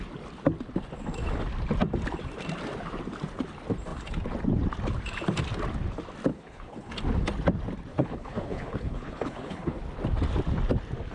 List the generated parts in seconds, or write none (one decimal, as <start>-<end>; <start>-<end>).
6.3-6.9; 7.9-9.8